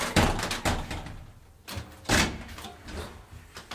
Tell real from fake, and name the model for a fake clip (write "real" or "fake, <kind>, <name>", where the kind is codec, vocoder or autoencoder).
real